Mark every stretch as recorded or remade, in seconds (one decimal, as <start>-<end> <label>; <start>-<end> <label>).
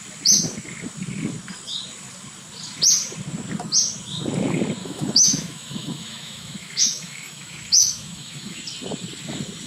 0.0-4.8 recorded; 4.8-8.6 remade; 8.6-9.7 recorded